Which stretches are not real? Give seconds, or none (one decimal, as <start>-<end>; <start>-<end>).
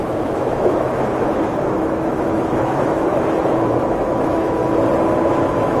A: 0.0-4.6; 5.2-5.8